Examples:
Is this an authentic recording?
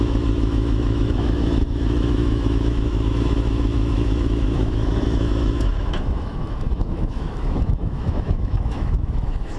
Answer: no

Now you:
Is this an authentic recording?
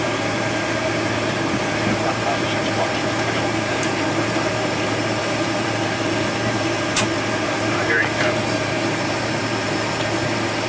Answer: no